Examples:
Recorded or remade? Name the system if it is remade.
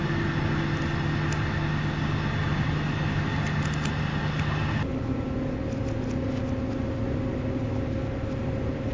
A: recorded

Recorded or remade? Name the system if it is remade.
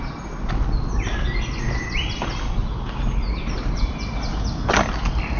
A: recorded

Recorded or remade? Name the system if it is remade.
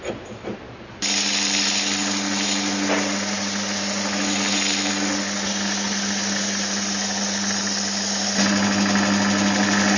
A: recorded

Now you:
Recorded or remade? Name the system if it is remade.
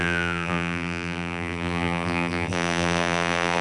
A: remade, vocoder, BigVGAN v2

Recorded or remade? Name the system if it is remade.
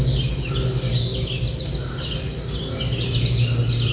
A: recorded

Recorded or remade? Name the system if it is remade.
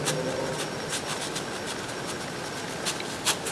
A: recorded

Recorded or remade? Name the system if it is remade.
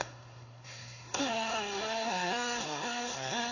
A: remade, codec, SNAC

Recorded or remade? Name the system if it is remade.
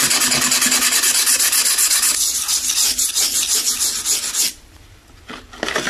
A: recorded